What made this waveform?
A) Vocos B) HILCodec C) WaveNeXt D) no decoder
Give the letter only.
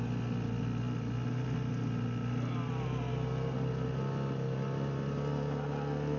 D